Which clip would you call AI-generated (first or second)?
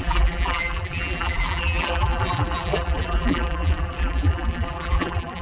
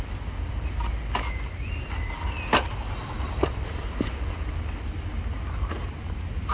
first